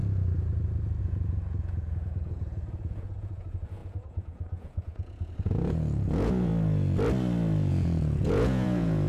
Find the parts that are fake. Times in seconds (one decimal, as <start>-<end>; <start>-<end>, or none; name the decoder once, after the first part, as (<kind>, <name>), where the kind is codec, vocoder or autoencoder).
1.0-6.5 (vocoder, Vocos); 7.7-9.1